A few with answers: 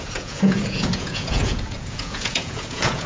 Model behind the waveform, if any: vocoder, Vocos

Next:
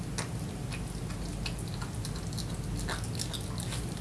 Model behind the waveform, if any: none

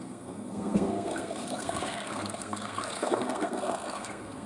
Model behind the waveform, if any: codec, SNAC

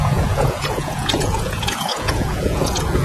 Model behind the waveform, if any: vocoder, Vocos